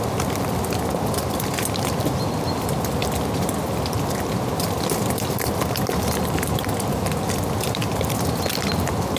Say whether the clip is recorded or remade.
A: recorded